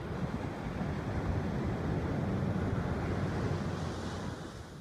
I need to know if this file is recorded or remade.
recorded